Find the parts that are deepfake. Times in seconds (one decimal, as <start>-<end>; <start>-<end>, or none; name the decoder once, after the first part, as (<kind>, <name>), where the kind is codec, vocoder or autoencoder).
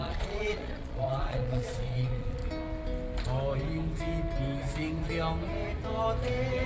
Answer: 0.0-2.4 (vocoder, Vocos)